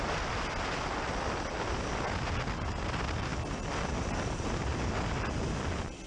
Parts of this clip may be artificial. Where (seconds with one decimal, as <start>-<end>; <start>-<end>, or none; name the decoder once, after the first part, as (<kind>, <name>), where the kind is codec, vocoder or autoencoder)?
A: none